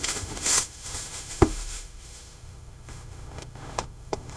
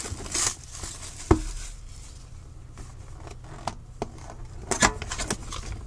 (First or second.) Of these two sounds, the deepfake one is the first